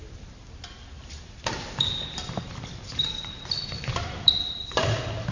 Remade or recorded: remade